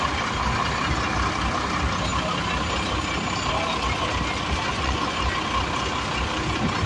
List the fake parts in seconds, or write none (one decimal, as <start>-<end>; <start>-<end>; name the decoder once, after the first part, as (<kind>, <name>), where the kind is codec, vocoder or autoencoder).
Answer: 4.7-5.2 (vocoder, Vocos)